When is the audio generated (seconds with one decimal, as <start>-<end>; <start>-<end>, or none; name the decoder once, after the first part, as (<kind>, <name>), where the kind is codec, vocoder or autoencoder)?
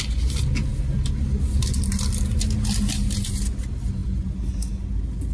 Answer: none